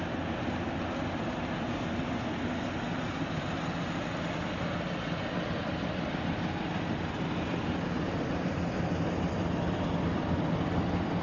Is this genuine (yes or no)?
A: yes